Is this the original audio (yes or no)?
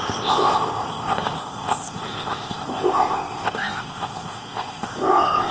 no